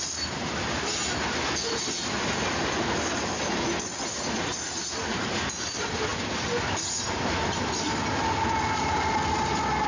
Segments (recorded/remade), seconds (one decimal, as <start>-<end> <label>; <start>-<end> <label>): 0.0-9.9 recorded